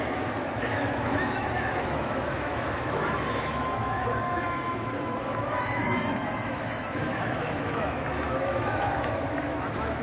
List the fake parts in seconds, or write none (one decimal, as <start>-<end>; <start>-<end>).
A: 0.0-10.0